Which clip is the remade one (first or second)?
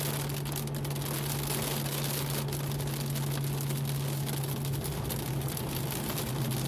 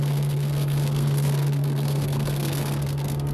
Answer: second